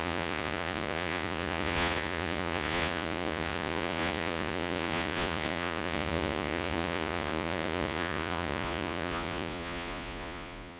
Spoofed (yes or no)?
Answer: yes